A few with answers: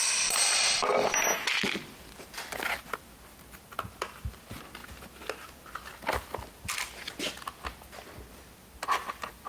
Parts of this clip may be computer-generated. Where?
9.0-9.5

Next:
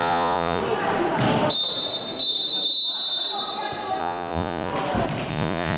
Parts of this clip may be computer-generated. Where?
0.0-0.6; 4.0-4.7; 5.3-5.8

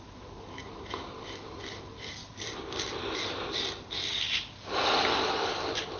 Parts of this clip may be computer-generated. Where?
2.2-6.0

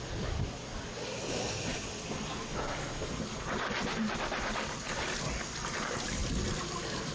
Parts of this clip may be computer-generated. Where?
0.0-0.7; 5.0-7.1

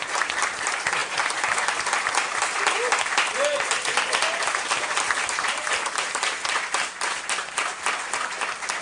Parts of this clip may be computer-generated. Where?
none

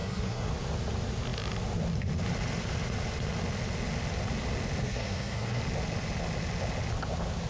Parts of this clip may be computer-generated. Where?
0.0-0.5; 4.8-5.6